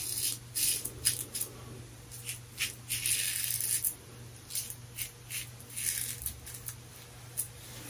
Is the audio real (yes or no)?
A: yes